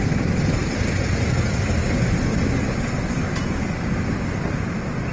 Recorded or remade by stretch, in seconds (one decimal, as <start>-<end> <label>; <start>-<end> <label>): 0.0-5.1 recorded